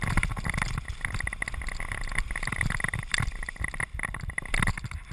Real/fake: fake